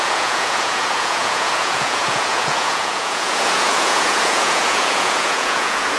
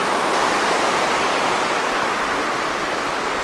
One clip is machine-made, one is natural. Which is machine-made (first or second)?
first